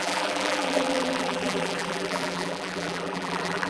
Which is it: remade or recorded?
remade